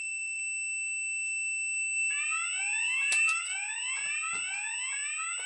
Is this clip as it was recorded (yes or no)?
yes